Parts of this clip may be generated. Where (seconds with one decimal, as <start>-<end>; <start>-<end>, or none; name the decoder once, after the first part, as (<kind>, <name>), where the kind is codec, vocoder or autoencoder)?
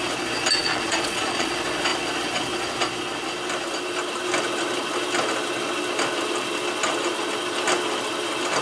0.6-1.5 (vocoder, Vocos)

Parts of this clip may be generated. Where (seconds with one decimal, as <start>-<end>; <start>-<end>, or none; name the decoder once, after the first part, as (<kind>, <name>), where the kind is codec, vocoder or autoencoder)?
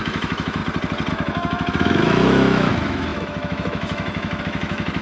0.0-0.6 (autoencoder, DAC-VAE); 1.1-5.0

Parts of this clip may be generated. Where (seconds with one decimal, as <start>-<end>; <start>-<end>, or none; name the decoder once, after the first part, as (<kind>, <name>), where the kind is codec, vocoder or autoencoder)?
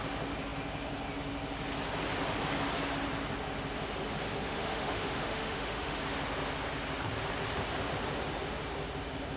4.4-6.0 (autoencoder, DAC-VAE)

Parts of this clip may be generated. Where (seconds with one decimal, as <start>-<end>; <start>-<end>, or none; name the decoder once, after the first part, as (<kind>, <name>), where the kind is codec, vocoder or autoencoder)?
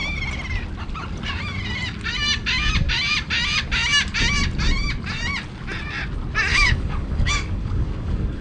6.5-8.4 (codec, DAC)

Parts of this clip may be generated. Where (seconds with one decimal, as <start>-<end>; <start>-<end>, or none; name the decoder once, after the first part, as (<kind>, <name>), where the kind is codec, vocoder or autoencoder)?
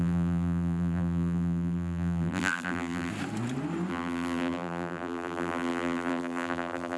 0.0-3.1 (vocoder, BigVGAN v2); 3.9-7.0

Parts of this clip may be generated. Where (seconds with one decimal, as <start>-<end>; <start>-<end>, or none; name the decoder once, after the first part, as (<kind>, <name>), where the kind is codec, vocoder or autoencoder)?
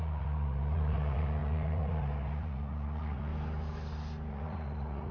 0.0-3.3 (vocoder, Vocos); 4.3-5.1